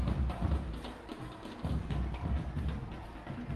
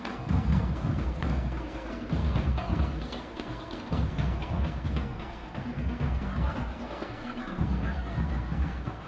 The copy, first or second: second